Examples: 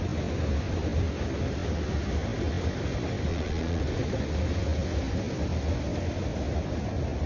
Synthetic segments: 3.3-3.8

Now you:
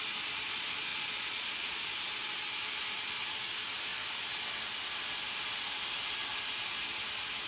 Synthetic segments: 0.9-1.8

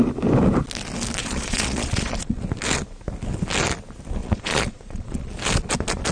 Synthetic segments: 1.2-2.4; 4.2-5.3

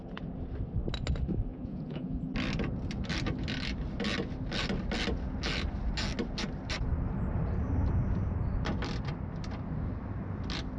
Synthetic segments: 1.5-2.2

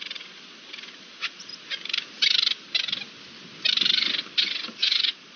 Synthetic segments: 0.0-1.5; 4.7-5.4

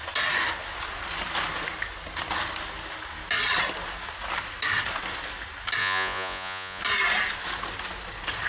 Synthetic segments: 5.8-6.8

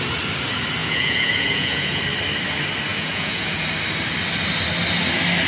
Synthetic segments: 0.8-2.0; 2.9-3.6